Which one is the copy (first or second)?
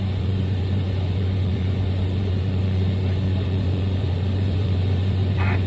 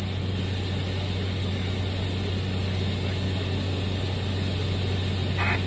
first